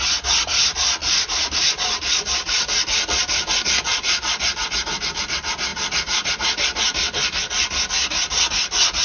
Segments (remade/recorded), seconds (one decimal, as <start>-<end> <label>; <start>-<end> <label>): 0.0-1.0 recorded; 1.0-2.7 remade; 2.7-3.9 recorded; 3.9-5.2 remade; 5.2-5.7 recorded; 5.7-6.3 remade; 6.3-9.0 recorded